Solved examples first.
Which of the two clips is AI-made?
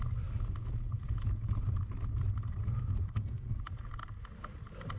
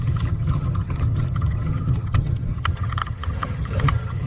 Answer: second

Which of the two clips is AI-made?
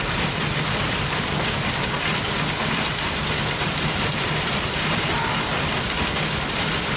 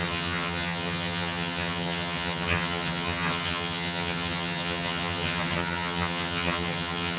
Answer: second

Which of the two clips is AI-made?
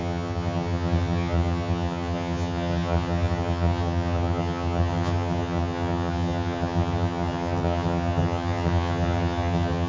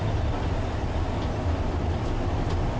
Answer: first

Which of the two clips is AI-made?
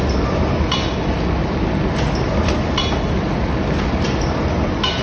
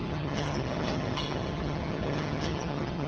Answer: second